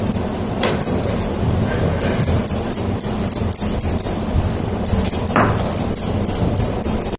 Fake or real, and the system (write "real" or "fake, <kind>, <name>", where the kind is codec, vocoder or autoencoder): fake, vocoder, BigVGAN v2